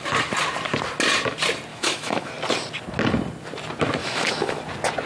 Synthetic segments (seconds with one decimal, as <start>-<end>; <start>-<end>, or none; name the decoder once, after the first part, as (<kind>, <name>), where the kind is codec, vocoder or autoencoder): 1.7-2.3 (autoencoder, DAC-VAE); 4.0-4.6